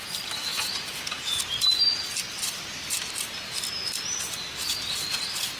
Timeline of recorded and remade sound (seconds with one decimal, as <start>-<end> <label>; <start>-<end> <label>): 0.0-0.5 recorded; 0.5-1.4 remade; 1.4-5.6 recorded